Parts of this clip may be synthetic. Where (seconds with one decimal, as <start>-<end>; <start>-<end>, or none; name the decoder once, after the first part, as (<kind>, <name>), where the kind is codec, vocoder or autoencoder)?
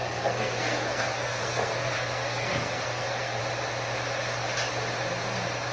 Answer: 0.0-3.4 (codec, SNAC)